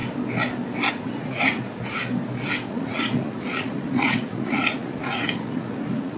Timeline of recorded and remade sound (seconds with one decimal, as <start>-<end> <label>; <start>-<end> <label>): 0.0-0.9 recorded; 0.9-2.0 remade; 2.0-2.7 recorded; 2.7-6.2 remade